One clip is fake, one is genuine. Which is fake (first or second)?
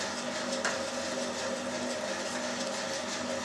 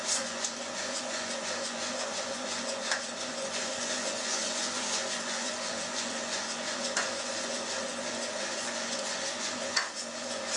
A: second